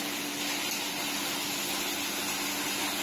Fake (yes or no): no